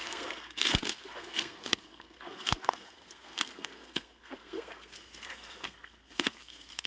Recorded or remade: remade